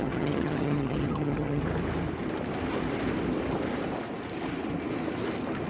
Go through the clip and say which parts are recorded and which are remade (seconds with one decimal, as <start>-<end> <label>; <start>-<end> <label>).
0.0-1.6 remade; 1.6-5.7 recorded